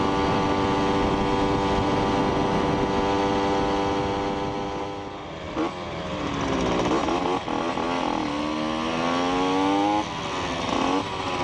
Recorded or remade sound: recorded